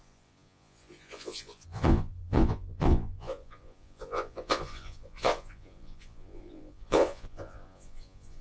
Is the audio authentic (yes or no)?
no